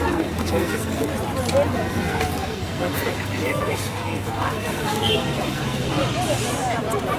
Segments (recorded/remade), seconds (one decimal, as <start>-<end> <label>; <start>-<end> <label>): 0.0-1.1 remade; 1.1-1.7 recorded; 1.7-6.0 remade; 6.0-7.2 recorded